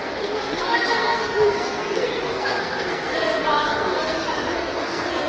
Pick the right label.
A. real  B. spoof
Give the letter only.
B